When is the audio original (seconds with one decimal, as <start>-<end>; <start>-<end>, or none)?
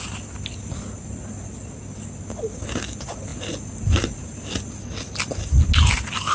0.0-6.3